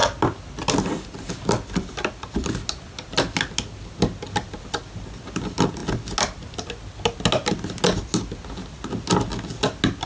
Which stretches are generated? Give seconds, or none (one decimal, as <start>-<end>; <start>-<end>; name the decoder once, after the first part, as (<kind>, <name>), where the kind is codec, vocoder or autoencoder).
none